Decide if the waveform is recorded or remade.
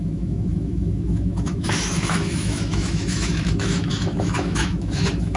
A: remade